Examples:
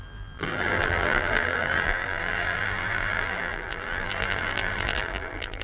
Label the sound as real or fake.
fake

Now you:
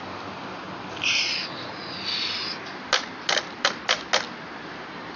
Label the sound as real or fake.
real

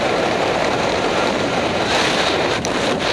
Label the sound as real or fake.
fake